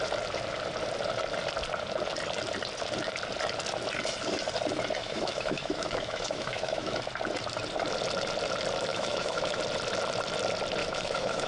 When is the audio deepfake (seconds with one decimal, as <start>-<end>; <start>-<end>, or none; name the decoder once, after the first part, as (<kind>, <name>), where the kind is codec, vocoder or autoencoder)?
5.0-7.0 (autoencoder, DAC-VAE); 8.9-9.6; 10.8-11.5

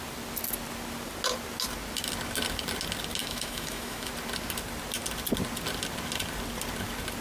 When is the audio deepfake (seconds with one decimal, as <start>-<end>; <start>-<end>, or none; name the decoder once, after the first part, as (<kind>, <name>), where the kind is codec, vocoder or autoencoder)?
3.2-4.1 (autoencoder, DAC-VAE)